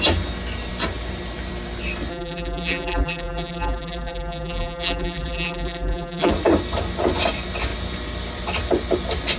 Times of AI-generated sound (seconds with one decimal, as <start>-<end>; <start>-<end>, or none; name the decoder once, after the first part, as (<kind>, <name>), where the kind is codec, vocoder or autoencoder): 2.1-6.3 (vocoder, BigVGAN v2)